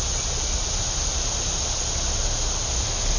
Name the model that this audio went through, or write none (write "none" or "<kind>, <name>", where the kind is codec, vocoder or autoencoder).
none